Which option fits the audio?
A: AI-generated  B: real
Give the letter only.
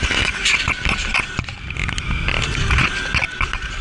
B